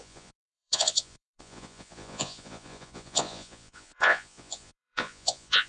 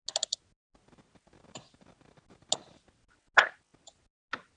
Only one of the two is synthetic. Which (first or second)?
first